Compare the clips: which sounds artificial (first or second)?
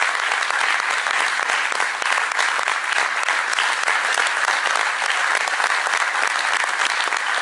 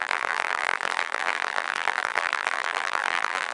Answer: second